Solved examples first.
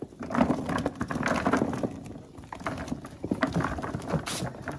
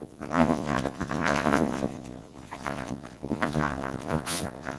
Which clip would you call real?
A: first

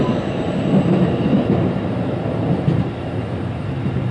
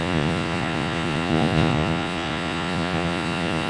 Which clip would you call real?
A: first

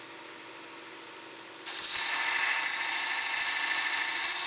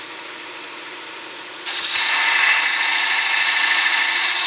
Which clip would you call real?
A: first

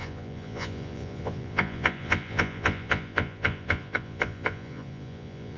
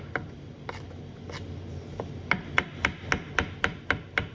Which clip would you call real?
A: second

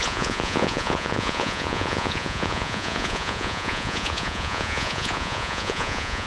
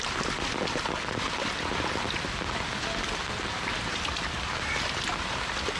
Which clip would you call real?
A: second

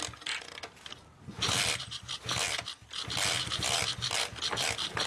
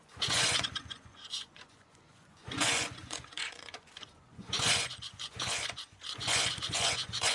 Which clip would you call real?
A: first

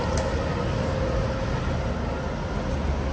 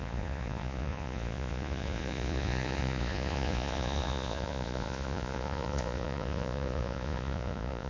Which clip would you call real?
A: first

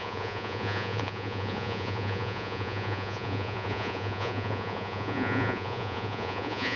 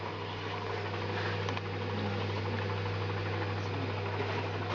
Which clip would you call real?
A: second